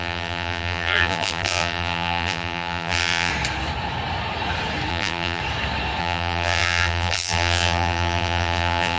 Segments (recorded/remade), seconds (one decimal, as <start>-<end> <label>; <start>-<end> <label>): 0.0-3.3 remade; 3.3-4.9 recorded; 4.9-5.4 remade; 5.4-6.0 recorded; 6.0-9.0 remade

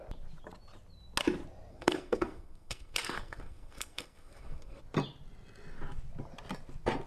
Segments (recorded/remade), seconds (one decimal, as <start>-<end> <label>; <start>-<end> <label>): 0.0-1.7 recorded; 1.7-4.8 remade; 4.8-7.1 recorded